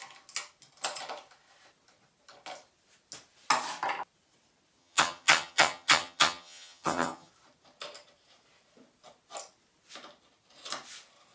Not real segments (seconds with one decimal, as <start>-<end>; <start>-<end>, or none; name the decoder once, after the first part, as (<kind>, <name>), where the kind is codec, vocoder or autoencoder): 4.8-7.3 (vocoder, HiFi-GAN)